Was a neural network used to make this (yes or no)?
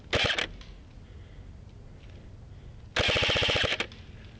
no